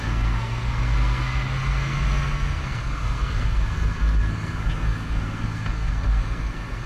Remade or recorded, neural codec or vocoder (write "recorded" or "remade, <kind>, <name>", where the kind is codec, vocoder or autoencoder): remade, codec, SNAC